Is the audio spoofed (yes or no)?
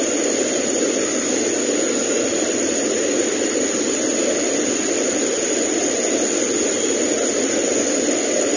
no